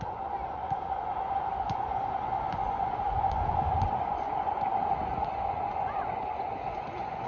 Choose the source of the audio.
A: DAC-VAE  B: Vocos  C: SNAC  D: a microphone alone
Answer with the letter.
B